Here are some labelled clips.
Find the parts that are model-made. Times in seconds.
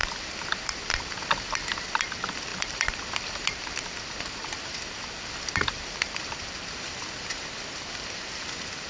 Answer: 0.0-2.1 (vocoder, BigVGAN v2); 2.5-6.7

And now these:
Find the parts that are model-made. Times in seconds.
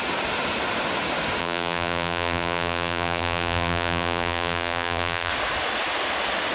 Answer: 1.4-5.3 (vocoder, BigVGAN v2)